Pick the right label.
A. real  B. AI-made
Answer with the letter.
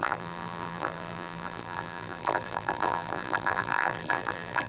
B